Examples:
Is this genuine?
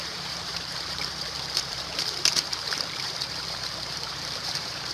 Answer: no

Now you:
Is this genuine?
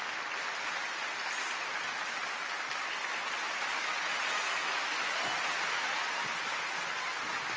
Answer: yes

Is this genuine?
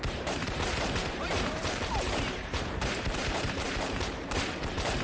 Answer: no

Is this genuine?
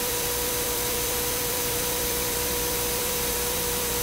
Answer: no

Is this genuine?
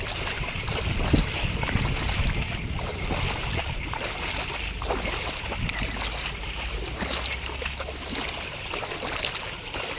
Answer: yes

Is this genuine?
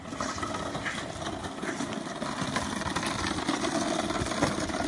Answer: yes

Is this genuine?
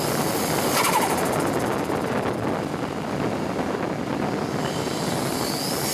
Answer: yes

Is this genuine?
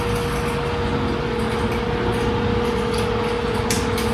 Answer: yes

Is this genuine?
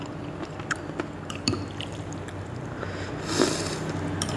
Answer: no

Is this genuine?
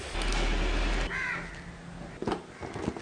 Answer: yes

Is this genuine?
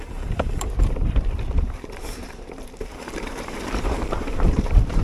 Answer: no